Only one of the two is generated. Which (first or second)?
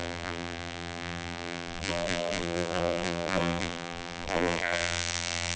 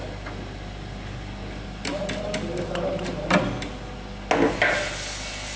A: first